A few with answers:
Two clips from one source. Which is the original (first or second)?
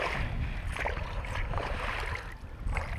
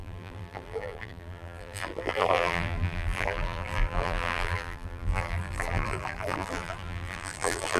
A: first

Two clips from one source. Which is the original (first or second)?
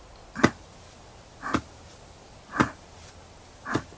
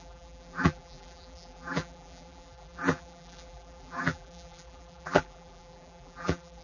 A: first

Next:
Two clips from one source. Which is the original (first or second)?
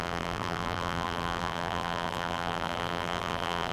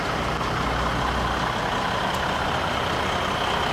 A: second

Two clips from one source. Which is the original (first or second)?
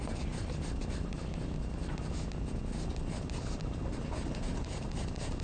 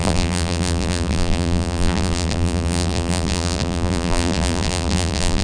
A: first